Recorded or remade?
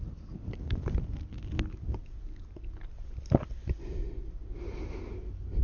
recorded